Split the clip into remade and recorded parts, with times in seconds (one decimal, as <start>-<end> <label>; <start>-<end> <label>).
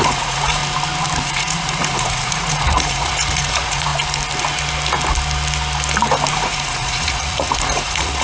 0.0-0.6 remade; 0.6-1.2 recorded; 1.2-3.9 remade; 3.9-6.3 recorded; 6.3-8.2 remade